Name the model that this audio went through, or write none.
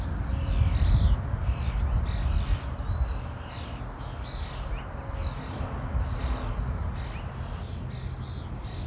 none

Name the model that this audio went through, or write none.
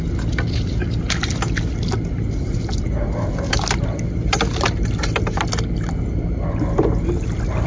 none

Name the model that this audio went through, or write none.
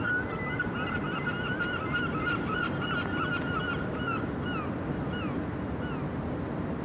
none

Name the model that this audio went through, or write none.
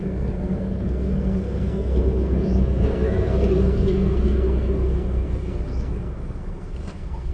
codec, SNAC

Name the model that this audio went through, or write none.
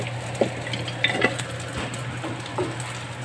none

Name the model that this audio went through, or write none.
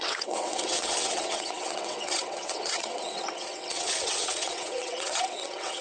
vocoder, WaveNeXt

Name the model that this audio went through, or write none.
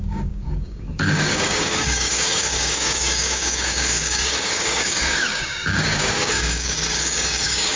codec, DAC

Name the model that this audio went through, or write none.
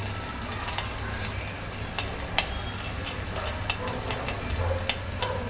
none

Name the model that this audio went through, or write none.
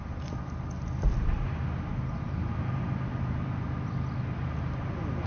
vocoder, BigVGAN v2